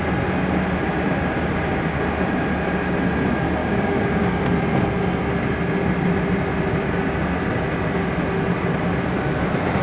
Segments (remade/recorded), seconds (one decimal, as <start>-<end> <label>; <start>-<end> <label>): 0.0-3.6 recorded; 3.6-4.4 remade; 4.4-9.8 recorded